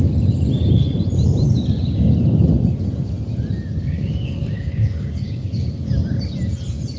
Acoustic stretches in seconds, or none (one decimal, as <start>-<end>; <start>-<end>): 0.0-3.8; 5.9-7.0